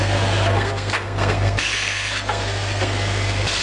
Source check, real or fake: fake